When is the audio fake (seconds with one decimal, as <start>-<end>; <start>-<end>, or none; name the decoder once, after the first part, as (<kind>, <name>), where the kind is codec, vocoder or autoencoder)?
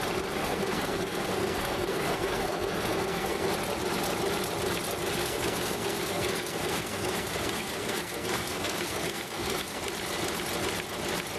0.4-3.5 (codec, SNAC); 5.2-9.8